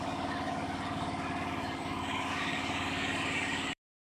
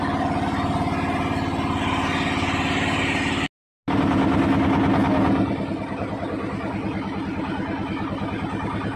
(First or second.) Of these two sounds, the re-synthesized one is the first